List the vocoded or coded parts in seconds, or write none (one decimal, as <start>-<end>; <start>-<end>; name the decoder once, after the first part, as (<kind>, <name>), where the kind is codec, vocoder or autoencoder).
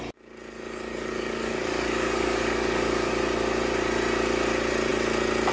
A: 0.5-3.1 (codec, DAC)